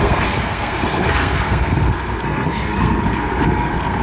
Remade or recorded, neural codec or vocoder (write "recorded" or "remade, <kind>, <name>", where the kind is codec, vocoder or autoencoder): remade, codec, SNAC